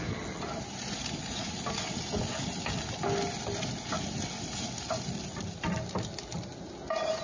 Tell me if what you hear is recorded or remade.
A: recorded